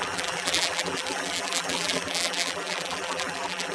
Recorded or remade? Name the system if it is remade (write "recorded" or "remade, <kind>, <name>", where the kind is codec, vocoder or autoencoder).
remade, vocoder, BigVGAN v2